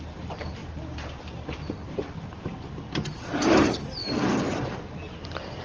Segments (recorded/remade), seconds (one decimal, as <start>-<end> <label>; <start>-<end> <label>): 0.0-0.6 recorded; 0.6-2.6 remade; 2.6-4.0 recorded; 4.0-5.6 remade